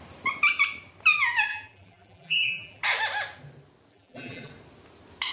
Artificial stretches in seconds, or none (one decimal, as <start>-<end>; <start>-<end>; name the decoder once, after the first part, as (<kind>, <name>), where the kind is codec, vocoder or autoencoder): 1.5-2.8 (vocoder, BigVGAN v2); 3.9-4.5